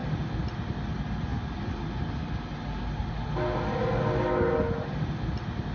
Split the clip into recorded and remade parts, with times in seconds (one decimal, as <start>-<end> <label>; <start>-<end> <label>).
0.0-5.7 recorded